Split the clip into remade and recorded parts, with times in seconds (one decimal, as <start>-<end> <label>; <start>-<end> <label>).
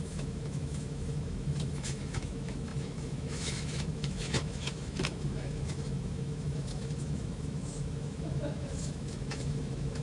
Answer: 0.0-10.0 remade